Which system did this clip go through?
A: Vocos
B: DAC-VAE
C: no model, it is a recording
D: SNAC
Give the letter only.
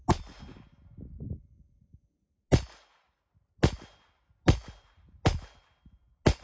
C